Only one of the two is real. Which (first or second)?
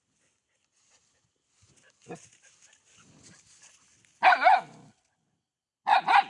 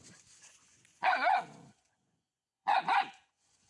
first